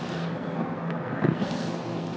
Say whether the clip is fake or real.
fake